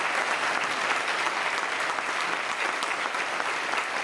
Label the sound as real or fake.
real